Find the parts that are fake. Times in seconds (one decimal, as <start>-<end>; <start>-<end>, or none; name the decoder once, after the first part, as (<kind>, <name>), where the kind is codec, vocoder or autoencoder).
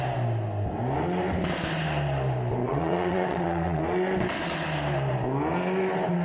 2.6-3.8 (vocoder, WaveNeXt)